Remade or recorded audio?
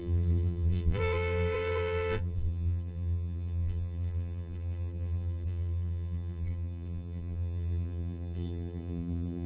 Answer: remade